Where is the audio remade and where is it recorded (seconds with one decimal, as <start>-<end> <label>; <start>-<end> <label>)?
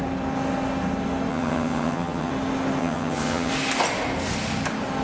0.0-1.3 recorded; 1.3-2.3 remade; 2.3-2.8 recorded; 2.8-3.5 remade; 3.5-5.0 recorded